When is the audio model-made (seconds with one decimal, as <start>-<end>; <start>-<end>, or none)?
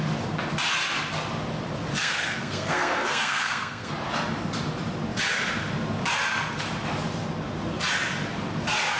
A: 2.0-3.9